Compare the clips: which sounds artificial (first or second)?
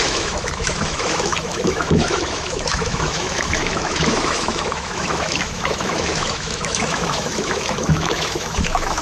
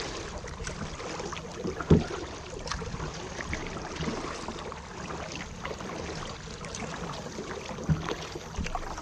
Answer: first